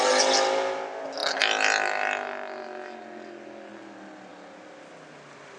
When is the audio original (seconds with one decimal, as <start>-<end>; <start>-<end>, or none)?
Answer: 0.0-5.6